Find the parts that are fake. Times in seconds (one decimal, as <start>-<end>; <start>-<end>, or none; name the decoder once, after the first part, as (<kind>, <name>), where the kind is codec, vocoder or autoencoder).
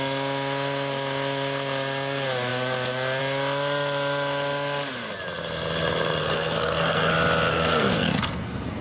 6.2-7.1 (codec, SNAC); 7.5-8.8